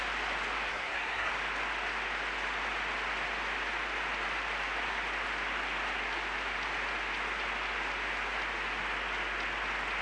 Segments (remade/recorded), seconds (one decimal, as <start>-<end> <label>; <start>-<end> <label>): 0.0-0.7 recorded; 0.7-1.3 remade; 1.3-10.0 recorded